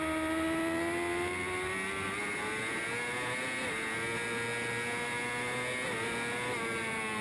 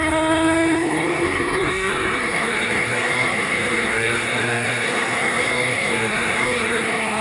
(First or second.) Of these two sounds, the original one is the first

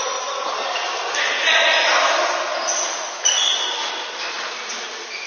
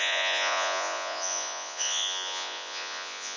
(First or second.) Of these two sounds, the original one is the first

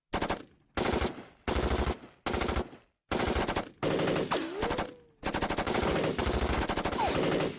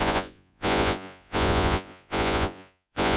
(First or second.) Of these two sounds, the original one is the first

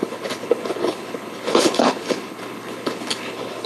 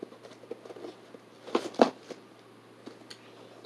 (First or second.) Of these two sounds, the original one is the second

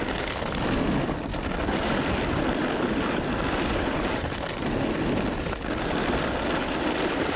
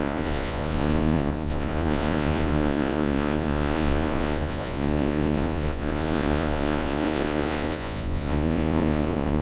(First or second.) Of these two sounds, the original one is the first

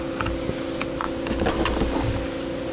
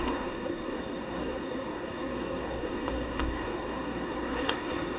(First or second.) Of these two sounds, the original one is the first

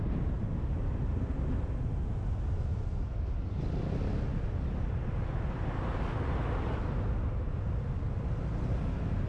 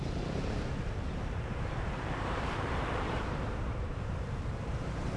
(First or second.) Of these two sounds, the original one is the first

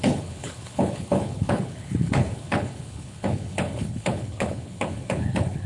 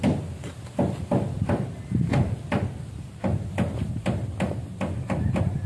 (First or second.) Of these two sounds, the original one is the second